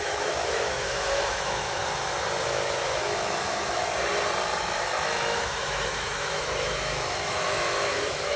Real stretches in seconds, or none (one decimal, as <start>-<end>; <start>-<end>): 1.8-2.4; 3.8-4.6